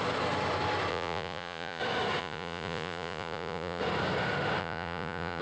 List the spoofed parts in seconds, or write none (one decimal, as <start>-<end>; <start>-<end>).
0.9-1.8; 2.2-3.8; 4.6-5.4